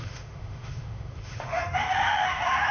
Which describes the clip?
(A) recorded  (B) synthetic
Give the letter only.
B